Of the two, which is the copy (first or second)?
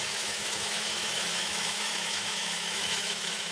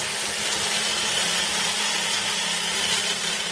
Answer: first